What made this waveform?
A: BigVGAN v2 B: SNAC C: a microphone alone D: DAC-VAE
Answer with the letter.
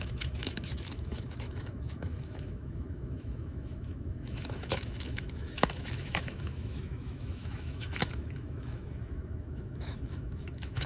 D